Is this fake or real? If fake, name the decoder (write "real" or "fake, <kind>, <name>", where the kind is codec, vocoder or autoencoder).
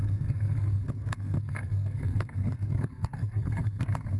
fake, codec, SNAC